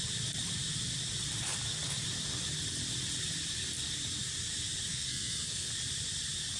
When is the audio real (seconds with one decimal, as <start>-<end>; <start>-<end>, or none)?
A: 0.0-4.9; 5.7-6.6